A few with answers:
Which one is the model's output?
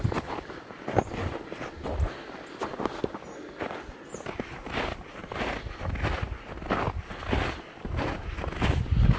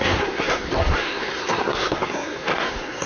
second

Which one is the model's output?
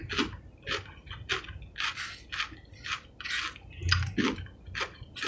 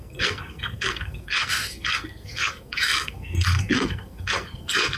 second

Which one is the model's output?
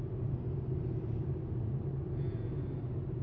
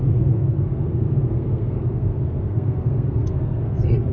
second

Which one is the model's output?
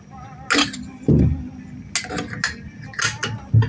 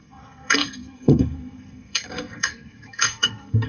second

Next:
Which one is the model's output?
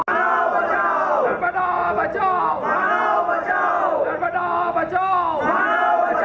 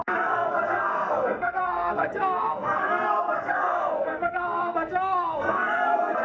second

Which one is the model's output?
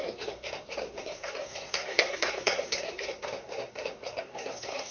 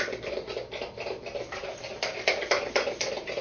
first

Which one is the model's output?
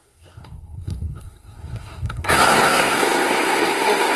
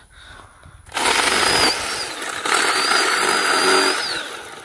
first